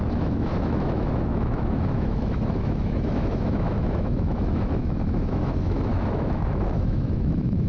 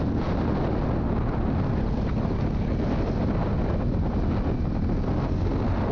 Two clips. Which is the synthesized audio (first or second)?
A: first